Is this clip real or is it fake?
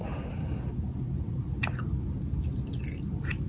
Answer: real